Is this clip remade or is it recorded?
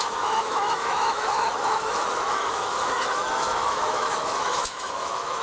remade